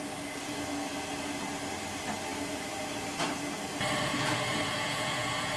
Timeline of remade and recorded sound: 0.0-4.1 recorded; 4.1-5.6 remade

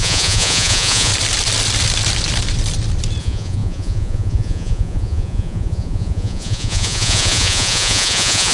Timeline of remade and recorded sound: 0.0-1.1 remade; 1.1-3.2 recorded; 3.2-8.5 remade